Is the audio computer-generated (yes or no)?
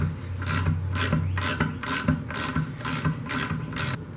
no